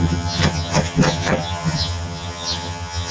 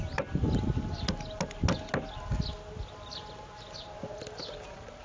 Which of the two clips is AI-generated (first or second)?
first